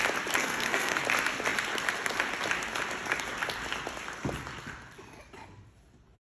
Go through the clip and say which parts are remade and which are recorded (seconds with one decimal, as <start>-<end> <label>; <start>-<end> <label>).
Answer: 0.0-0.4 recorded; 0.4-1.0 remade; 1.0-6.3 recorded